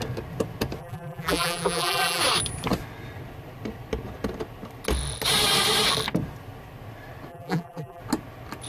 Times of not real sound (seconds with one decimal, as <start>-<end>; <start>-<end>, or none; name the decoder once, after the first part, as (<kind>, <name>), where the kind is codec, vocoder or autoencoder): 0.8-2.2 (vocoder, BigVGAN v2); 7.3-8.0